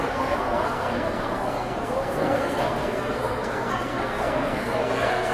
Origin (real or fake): fake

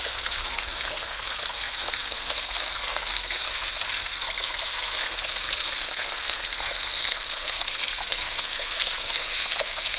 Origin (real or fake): fake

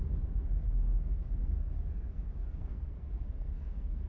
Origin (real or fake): fake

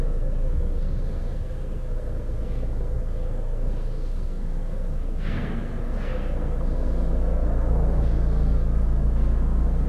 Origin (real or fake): fake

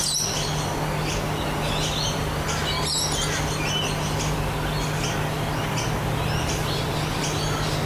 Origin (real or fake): real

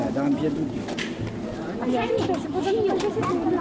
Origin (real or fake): real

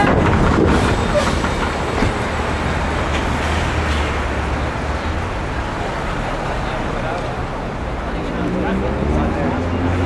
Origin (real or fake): real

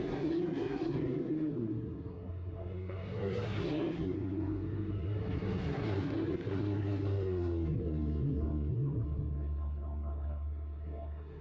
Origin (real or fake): fake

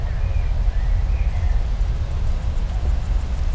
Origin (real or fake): real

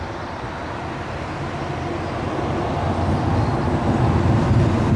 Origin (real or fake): real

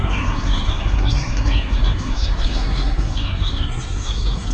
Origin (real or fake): fake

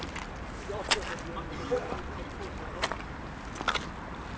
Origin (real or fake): real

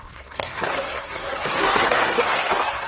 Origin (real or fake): fake